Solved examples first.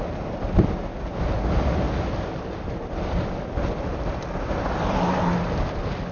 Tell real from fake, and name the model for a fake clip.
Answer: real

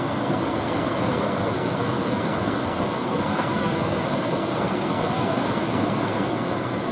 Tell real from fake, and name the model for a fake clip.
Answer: fake, codec, SNAC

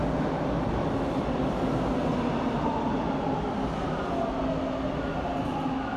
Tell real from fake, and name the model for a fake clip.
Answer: real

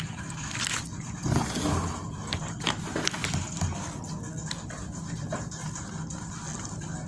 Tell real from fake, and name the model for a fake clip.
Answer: real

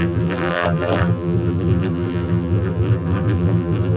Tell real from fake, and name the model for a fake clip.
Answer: fake, vocoder, BigVGAN v2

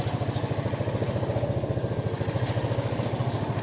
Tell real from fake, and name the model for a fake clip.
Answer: real